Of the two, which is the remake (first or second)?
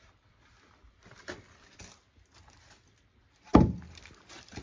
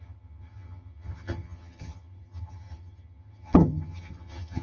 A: second